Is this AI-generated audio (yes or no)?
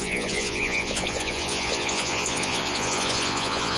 yes